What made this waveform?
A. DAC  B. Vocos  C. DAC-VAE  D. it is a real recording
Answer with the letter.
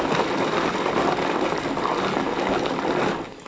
D